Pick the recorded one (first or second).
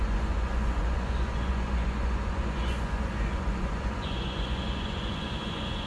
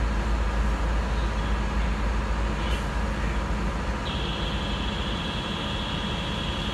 second